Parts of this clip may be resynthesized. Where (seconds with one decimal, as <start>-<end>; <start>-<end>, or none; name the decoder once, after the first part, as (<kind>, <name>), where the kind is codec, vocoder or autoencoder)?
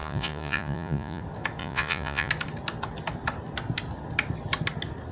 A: 0.0-1.2 (vocoder, Vocos); 1.6-2.3